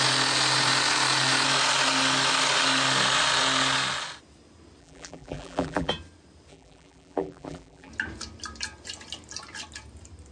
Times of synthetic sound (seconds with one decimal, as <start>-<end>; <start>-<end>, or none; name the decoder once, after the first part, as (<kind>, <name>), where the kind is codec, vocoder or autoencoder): 4.8-5.9 (vocoder, BigVGAN v2); 6.5-7.9